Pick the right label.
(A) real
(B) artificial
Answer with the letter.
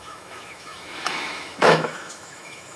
B